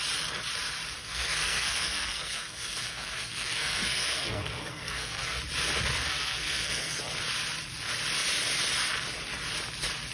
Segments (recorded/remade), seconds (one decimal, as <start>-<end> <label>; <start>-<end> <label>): 0.0-1.0 recorded; 1.0-5.4 remade; 5.4-6.1 recorded; 6.1-7.0 remade; 7.0-10.1 recorded